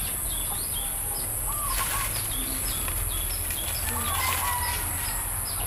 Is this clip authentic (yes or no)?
yes